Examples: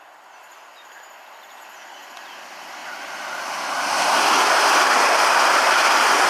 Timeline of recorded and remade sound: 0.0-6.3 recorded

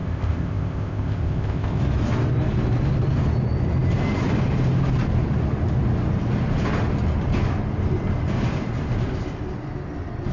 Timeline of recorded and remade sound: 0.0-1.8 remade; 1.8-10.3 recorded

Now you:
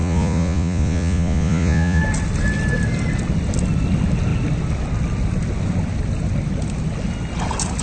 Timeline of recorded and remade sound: 0.0-2.0 remade; 2.0-7.8 recorded